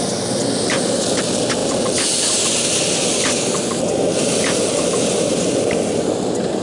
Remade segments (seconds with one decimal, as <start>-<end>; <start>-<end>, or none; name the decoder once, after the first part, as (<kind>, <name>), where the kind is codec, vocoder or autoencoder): none